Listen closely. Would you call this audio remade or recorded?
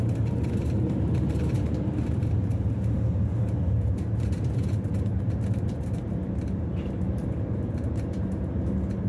remade